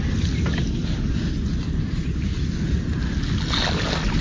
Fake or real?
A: real